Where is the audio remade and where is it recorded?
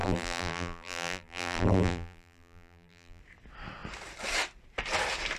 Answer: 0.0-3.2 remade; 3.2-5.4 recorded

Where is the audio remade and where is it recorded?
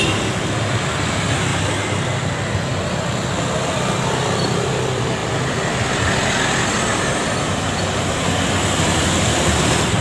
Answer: 0.0-10.0 recorded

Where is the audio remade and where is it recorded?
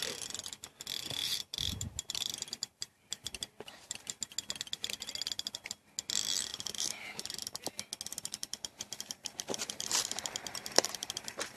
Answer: 0.0-1.2 recorded; 1.2-4.2 remade; 4.2-6.5 recorded; 6.5-7.6 remade; 7.6-8.1 recorded; 8.1-11.6 remade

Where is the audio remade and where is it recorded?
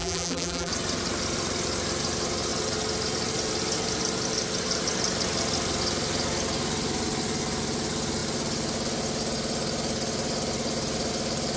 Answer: 0.0-0.7 remade; 0.7-11.6 recorded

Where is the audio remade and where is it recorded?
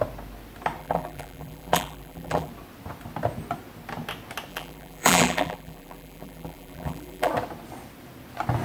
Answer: 0.0-0.8 recorded; 0.8-2.5 remade; 2.5-4.5 recorded; 4.5-7.3 remade; 7.3-8.6 recorded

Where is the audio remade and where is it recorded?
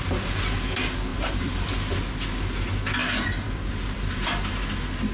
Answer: 0.0-1.1 recorded; 1.1-2.0 remade; 2.0-3.0 recorded; 3.0-3.7 remade; 3.7-5.1 recorded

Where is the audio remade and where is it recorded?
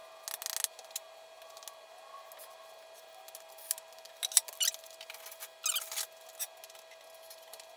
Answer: 0.0-7.8 recorded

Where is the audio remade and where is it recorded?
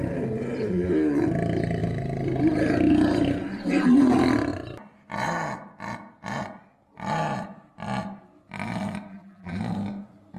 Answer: 0.0-9.1 recorded; 9.1-9.6 remade; 9.6-10.4 recorded